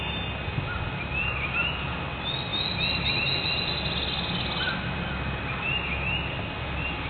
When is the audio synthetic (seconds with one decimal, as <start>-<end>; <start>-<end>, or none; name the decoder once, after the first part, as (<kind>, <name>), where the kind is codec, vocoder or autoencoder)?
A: none